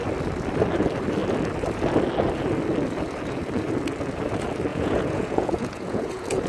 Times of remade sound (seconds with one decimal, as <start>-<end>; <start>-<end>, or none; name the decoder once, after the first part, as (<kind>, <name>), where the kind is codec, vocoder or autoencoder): 4.7-6.5 (vocoder, Vocos)